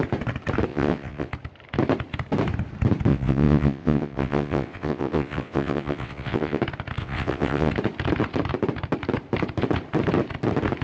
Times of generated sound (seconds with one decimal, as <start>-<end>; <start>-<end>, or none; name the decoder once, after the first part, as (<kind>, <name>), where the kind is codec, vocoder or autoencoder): 0.7-1.3 (vocoder, WaveNeXt); 3.1-6.6; 7.0-7.7

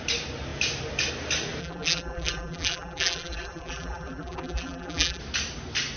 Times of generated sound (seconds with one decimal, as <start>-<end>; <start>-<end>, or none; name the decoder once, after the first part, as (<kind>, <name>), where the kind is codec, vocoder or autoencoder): 1.6-5.2 (vocoder, BigVGAN v2)

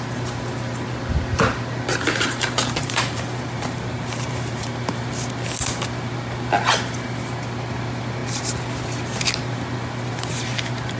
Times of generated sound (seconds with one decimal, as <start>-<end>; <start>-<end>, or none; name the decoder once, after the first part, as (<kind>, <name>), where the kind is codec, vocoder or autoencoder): 1.9-5.1 (vocoder, BigVGAN v2)

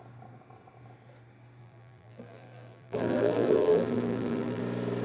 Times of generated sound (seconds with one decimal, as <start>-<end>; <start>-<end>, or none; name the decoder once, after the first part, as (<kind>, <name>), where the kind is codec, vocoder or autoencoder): 1.6-4.6 (vocoder, BigVGAN v2)

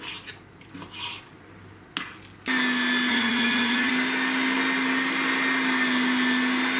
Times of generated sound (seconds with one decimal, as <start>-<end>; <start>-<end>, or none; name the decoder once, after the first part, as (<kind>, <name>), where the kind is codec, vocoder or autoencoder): 3.1-3.9 (vocoder, HiFi-GAN)

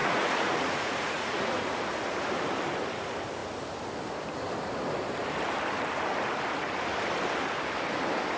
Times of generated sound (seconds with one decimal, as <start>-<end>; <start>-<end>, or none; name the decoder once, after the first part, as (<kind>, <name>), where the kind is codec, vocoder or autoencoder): 0.0-1.8 (vocoder, Vocos)

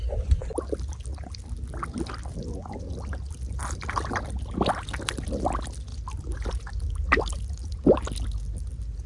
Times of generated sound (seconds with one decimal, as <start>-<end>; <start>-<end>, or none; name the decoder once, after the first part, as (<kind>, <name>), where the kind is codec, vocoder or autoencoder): 5.9-6.5 (vocoder, BigVGAN v2)